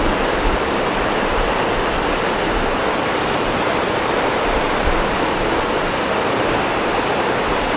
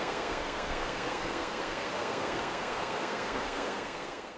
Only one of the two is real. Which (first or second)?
first